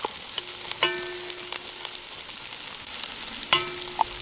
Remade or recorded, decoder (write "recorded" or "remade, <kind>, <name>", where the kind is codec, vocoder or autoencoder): recorded